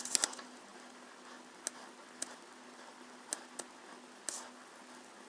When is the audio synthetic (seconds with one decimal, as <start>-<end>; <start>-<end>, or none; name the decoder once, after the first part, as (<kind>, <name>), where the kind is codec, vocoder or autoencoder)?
none